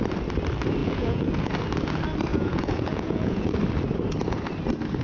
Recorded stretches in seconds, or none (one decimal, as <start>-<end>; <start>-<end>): 0.0-0.8; 1.5-2.3; 3.6-5.0